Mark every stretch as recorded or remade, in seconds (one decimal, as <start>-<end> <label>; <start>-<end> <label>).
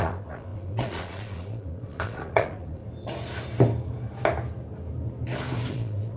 0.0-2.8 remade; 2.8-5.7 recorded; 5.7-6.2 remade